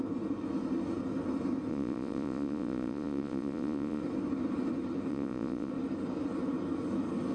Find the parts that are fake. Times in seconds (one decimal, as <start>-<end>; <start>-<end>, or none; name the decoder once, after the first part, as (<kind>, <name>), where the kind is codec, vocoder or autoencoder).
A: 1.7-4.0 (vocoder, Vocos); 5.1-5.7